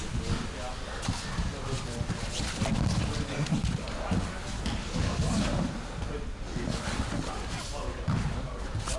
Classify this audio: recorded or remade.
recorded